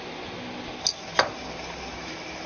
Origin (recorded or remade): recorded